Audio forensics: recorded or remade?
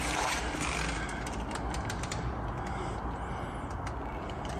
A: recorded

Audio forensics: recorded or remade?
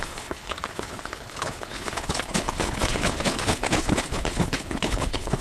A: remade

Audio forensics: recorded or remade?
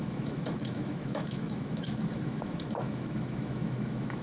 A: remade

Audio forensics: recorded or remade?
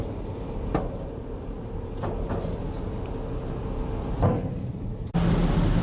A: recorded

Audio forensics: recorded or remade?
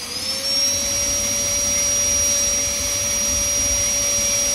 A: recorded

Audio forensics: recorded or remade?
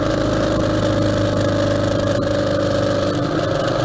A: recorded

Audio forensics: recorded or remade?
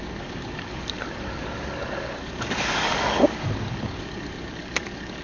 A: remade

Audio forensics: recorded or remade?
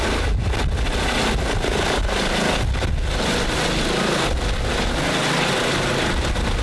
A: recorded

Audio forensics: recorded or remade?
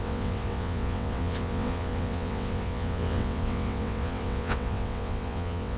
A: remade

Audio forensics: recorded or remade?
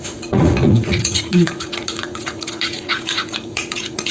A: remade